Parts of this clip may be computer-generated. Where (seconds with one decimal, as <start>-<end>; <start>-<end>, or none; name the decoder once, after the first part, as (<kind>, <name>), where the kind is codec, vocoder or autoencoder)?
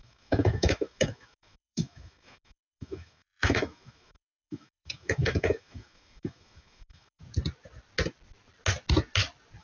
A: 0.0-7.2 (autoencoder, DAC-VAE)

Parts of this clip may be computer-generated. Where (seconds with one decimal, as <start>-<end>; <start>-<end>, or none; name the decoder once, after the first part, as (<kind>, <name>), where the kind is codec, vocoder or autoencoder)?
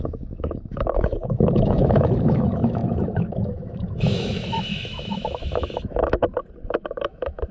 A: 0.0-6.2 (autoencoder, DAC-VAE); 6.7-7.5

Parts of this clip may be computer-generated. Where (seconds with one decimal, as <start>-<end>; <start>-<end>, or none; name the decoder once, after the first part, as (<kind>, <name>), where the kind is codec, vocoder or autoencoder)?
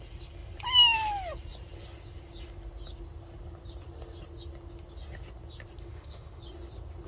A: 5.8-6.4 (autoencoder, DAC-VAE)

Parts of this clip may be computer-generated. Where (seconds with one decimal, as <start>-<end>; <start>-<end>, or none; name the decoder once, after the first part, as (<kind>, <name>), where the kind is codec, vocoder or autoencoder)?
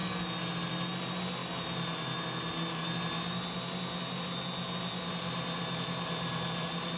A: none